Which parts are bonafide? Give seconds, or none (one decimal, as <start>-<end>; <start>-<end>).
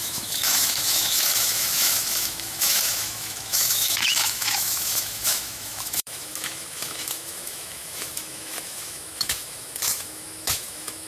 none